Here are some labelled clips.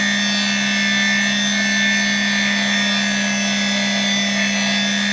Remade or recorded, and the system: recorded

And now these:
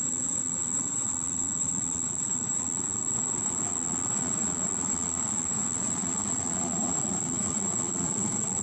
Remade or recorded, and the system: remade, vocoder, Vocos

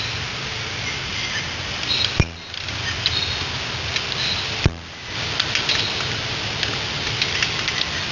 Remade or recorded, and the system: recorded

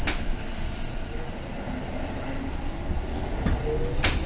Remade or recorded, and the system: recorded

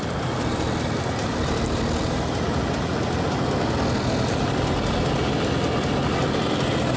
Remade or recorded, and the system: recorded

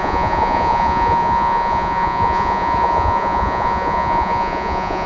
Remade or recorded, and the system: remade, vocoder, Vocos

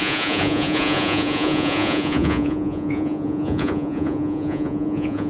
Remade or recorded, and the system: remade, vocoder, Vocos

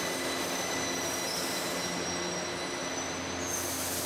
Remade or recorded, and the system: recorded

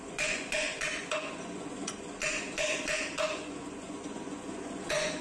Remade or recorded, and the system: remade, vocoder, Vocos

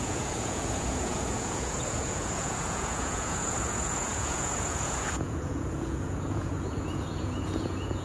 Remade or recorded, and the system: remade, vocoder, Vocos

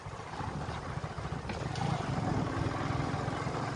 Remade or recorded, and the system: recorded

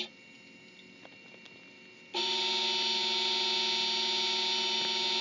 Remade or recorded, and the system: recorded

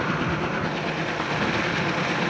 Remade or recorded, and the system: recorded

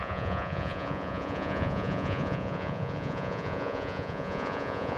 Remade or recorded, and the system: remade, vocoder, Vocos